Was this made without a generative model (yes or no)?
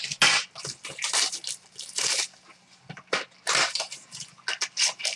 yes